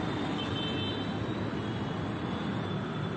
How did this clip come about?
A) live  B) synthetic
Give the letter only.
A